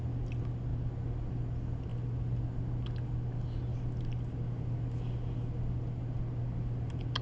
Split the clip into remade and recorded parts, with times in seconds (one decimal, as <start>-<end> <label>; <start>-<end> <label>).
0.0-7.2 recorded